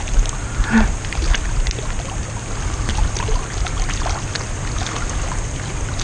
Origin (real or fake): real